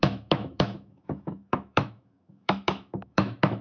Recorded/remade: remade